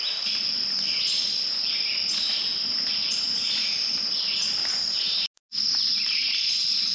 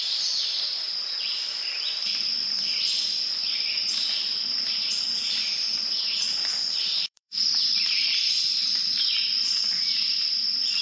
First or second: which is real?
first